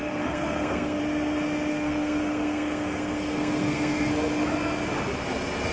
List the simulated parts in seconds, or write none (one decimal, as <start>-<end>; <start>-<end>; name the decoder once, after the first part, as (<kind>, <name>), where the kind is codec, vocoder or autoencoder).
0.0-1.0 (codec, SNAC); 1.7-4.1